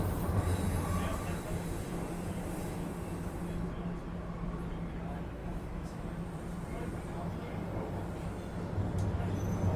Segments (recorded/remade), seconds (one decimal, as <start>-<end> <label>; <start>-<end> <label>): 0.0-5.4 recorded; 5.4-6.1 remade; 6.1-9.8 recorded